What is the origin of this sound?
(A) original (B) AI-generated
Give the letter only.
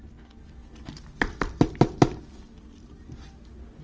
A